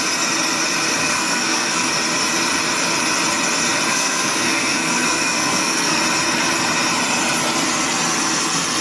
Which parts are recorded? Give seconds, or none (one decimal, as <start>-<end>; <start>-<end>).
0.0-1.0; 1.9-3.9; 6.0-8.8